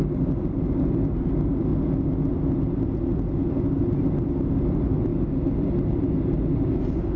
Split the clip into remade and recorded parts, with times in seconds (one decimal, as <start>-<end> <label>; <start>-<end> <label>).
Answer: 0.0-7.2 recorded